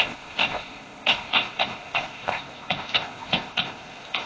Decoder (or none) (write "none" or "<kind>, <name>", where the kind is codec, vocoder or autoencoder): codec, ZipCodec